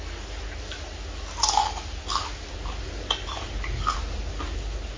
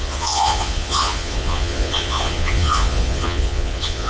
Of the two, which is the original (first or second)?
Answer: first